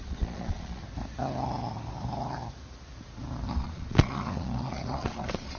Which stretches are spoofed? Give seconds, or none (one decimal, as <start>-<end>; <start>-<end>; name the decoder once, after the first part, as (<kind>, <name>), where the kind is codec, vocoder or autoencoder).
0.0-0.8 (vocoder, Vocos); 3.5-5.6